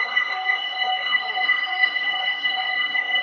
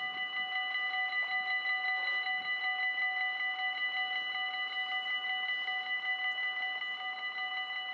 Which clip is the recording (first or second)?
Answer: second